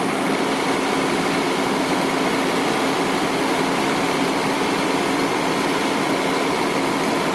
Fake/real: real